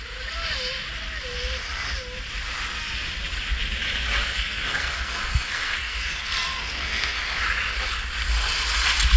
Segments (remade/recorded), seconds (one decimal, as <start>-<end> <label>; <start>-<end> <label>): 0.0-4.2 recorded; 4.2-7.4 remade; 7.4-9.2 recorded